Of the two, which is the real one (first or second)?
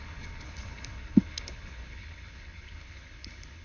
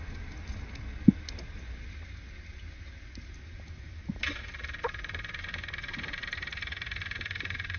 second